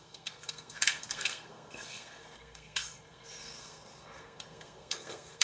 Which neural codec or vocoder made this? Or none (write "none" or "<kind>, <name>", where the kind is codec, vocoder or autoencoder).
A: codec, SNAC